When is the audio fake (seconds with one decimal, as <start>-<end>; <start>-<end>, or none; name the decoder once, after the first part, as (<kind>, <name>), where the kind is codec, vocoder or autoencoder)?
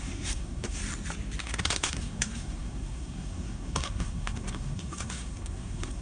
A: 0.0-0.8 (codec, SNAC); 1.4-6.0